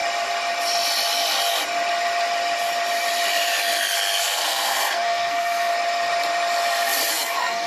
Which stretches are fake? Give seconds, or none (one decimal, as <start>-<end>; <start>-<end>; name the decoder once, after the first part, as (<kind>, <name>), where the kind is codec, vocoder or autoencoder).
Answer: 4.2-5.7 (codec, SNAC); 7.1-7.7